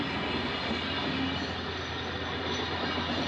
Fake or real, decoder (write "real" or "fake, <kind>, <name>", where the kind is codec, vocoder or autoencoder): real